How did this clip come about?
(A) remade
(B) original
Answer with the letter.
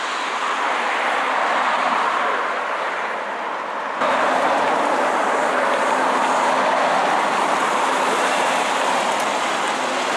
B